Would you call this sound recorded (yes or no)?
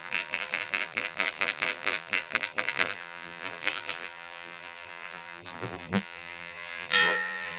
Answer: no